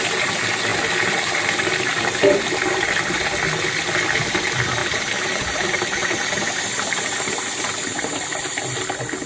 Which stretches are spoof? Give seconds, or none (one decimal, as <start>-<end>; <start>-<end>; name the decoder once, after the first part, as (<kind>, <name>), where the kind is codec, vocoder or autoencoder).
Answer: 4.8-7.7 (vocoder, BigVGAN v2)

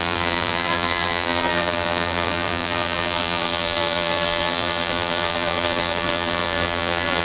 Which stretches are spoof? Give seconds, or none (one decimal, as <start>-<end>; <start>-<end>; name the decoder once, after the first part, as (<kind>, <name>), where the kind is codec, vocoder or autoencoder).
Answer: 0.0-7.2 (vocoder, BigVGAN v2)

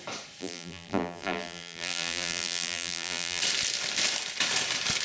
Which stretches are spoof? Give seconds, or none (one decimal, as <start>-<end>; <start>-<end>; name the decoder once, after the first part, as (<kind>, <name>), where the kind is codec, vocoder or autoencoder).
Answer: 0.4-3.4 (vocoder, BigVGAN v2)

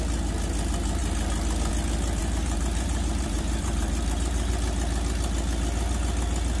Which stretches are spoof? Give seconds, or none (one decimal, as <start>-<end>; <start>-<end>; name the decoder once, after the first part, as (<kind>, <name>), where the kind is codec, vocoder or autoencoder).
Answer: 2.2-4.5 (vocoder, BigVGAN v2)

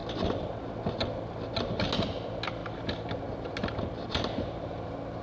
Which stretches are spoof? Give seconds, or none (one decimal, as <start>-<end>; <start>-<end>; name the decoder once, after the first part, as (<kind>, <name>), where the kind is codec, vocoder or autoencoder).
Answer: none

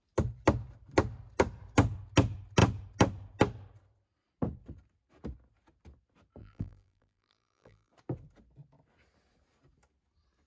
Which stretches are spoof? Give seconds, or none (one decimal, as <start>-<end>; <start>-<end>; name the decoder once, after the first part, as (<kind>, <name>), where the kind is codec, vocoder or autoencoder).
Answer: 6.4-7.9 (vocoder, BigVGAN v2)

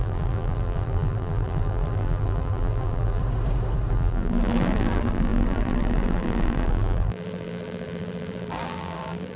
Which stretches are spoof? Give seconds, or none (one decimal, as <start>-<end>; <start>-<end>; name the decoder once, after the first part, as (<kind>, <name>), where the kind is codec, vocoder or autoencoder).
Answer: 0.0-3.2 (vocoder, BigVGAN v2); 3.9-9.4

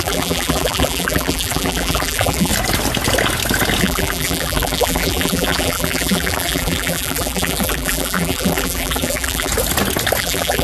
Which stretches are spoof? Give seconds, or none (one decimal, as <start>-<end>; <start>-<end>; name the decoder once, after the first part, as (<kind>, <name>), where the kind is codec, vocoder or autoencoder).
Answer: 0.0-2.5 (vocoder, BigVGAN v2); 3.8-9.5; 10.2-10.6